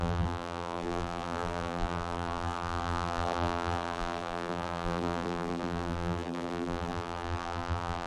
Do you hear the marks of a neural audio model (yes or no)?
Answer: yes